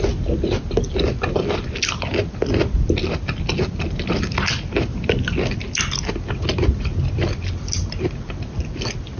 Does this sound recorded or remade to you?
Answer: recorded